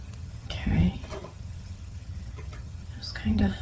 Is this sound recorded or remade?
remade